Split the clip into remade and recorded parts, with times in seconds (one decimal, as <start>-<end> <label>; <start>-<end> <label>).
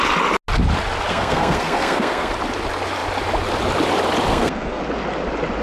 0.0-1.1 recorded; 1.1-2.3 remade; 2.3-4.3 recorded; 4.3-4.8 remade; 4.8-5.6 recorded